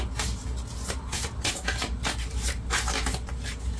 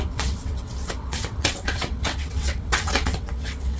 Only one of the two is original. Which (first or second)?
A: first